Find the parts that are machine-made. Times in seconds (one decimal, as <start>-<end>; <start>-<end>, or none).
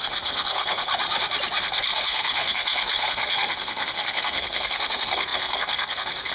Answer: 0.0-0.9; 1.6-6.3